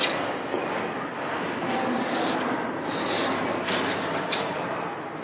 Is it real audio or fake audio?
real